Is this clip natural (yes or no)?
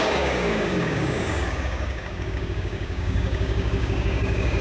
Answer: no